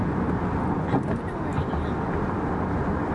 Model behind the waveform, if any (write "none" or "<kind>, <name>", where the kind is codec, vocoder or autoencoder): none